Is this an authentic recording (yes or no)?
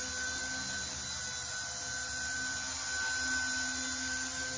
yes